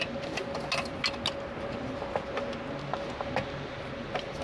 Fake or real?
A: real